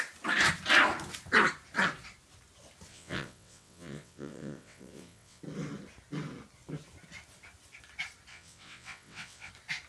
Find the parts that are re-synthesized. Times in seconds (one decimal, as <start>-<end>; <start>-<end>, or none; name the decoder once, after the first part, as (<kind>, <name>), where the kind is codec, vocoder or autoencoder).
2.9-5.4 (vocoder, WaveNeXt); 8.3-9.5